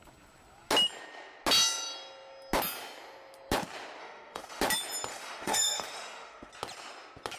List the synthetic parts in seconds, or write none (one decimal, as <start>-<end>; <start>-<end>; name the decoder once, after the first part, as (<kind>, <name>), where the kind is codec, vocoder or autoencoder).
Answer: 4.0-4.6 (autoencoder, DAC-VAE); 5.1-6.5